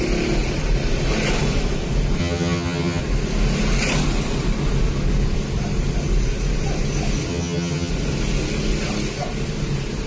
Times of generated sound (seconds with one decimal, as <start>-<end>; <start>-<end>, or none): 2.2-3.0; 7.3-7.9